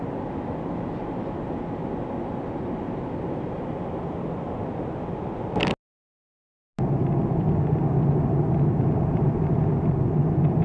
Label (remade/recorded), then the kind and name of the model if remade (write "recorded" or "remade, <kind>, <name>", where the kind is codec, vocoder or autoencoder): recorded